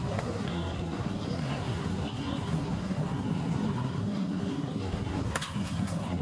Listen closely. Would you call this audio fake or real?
fake